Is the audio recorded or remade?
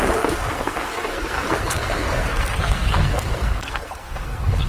remade